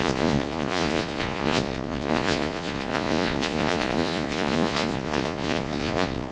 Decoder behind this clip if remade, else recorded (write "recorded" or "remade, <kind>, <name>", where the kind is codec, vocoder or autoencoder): remade, vocoder, Vocos